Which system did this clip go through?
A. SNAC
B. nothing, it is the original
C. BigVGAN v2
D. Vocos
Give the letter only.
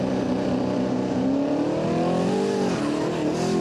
B